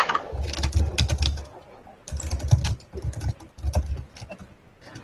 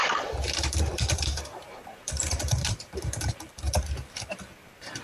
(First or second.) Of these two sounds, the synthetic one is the second